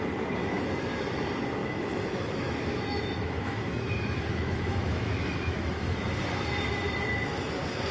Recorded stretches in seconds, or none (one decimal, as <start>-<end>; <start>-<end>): 0.0-0.4; 1.0-1.6; 6.1-7.9